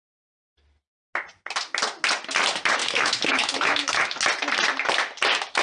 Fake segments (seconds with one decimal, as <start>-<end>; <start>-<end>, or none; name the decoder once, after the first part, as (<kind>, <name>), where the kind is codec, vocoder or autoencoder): 2.8-4.2 (autoencoder, DAC-VAE)